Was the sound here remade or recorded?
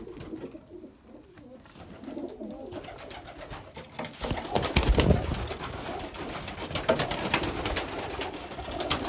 recorded